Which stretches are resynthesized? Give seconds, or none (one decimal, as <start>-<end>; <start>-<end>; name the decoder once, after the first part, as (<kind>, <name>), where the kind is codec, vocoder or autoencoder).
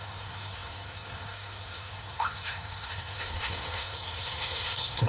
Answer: 0.0-5.1 (codec, SNAC)